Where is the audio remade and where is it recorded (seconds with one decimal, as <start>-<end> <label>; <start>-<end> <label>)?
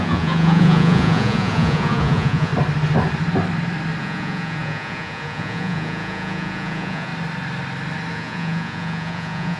0.0-2.5 remade; 2.5-4.0 recorded; 4.0-7.1 remade; 7.1-8.1 recorded; 8.1-9.6 remade